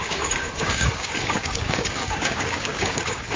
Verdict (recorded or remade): remade